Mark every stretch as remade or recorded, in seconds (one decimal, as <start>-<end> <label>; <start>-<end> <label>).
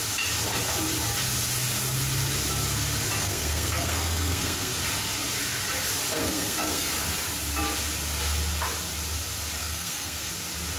0.0-3.2 recorded; 3.2-4.7 remade; 4.7-6.1 recorded; 6.1-6.9 remade; 6.9-9.6 recorded; 9.6-10.3 remade; 10.3-10.8 recorded